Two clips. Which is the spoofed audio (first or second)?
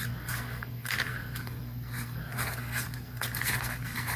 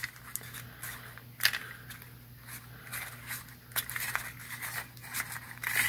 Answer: first